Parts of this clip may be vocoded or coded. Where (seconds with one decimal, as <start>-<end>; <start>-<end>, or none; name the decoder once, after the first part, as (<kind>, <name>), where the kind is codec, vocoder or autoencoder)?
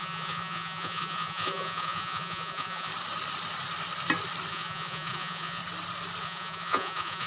0.0-2.9 (vocoder, Vocos); 4.5-5.6; 6.2-7.3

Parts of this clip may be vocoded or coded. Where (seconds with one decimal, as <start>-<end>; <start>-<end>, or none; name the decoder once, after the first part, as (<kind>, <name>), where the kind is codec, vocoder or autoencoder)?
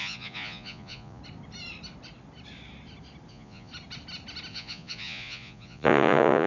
0.0-1.2 (vocoder, Vocos); 3.3-3.7; 4.5-6.5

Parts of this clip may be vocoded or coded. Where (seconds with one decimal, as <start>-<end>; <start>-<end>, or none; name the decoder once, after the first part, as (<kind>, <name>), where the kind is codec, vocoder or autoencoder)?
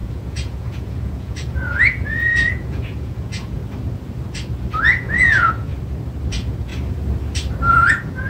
0.0-3.6 (vocoder, Vocos); 4.8-5.7; 6.3-6.7; 7.7-8.3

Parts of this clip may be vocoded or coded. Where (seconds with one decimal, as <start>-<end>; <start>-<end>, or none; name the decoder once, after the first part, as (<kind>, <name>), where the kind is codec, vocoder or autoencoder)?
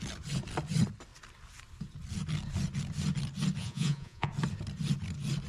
3.6-4.3 (vocoder, Vocos)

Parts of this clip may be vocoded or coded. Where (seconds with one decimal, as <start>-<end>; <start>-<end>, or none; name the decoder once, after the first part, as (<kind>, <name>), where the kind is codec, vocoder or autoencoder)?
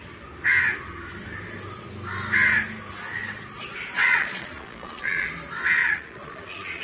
4.0-5.3 (vocoder, Vocos); 5.8-6.8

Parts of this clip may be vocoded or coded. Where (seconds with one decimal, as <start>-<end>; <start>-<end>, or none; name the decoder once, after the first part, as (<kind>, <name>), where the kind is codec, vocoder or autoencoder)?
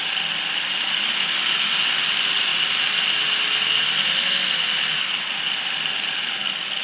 none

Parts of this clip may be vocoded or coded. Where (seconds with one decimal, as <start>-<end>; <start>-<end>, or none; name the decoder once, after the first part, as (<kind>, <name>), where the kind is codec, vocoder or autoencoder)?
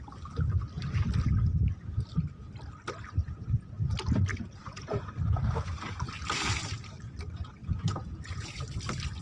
3.2-3.7 (vocoder, Vocos); 4.3-5.0; 7.6-8.6